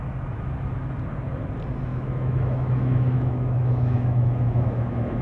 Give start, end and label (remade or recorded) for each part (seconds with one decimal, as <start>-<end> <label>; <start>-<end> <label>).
0.0-1.9 recorded; 1.9-5.2 remade